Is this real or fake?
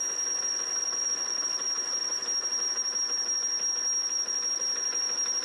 real